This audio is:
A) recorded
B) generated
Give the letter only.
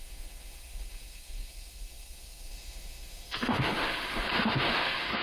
B